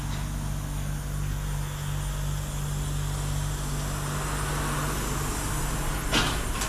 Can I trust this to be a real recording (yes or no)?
yes